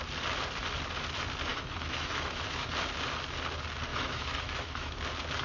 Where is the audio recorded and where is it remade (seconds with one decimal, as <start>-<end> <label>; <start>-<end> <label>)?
0.0-1.5 recorded; 1.5-2.7 remade; 2.7-3.9 recorded; 3.9-5.0 remade; 5.0-5.4 recorded